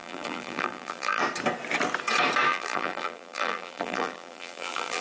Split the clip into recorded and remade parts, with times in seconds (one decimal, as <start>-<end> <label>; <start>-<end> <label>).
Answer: 0.0-1.2 remade; 1.2-2.5 recorded; 2.5-5.0 remade